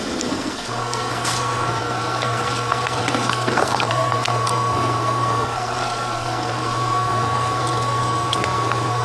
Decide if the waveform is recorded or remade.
remade